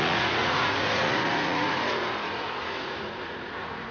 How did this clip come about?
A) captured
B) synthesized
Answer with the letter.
B